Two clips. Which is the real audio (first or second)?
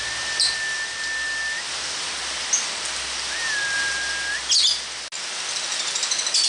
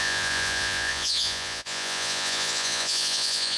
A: first